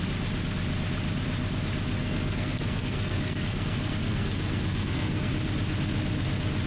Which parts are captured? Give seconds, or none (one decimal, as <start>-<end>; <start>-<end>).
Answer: 0.0-2.0; 5.3-6.7